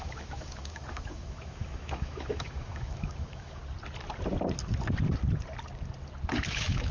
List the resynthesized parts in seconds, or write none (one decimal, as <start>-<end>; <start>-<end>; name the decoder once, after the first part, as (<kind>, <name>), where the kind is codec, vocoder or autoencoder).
0.0-3.6 (autoencoder, DAC-VAE); 6.5-6.9